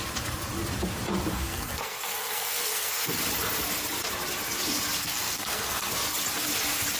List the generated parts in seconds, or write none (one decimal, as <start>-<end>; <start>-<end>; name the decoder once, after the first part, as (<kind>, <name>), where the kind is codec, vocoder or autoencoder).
1.3-3.2 (codec, SNAC); 5.0-5.9